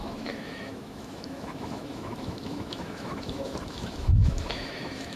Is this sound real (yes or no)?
no